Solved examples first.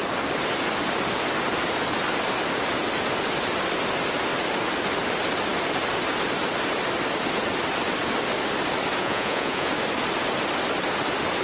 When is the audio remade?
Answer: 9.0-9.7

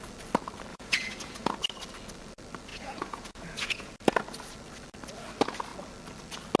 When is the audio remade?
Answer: 0.7-1.5; 2.7-3.9

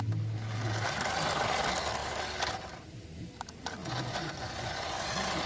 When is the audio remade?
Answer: 3.8-5.1

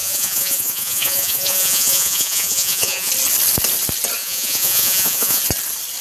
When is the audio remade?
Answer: 0.0-3.1; 4.2-5.4

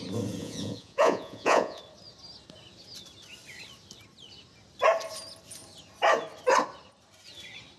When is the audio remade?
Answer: 0.4-1.8

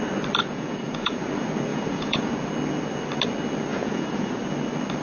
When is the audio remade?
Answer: 0.4-1.2; 1.7-2.3; 3.7-4.4

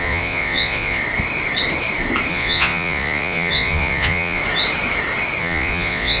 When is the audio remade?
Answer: 0.0-1.0; 2.3-4.4; 5.4-6.2